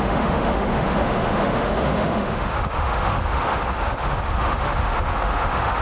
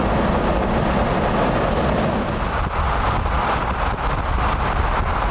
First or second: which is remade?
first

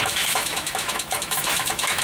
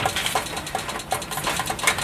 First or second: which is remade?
first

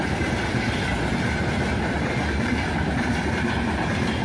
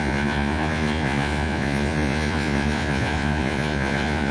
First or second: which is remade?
second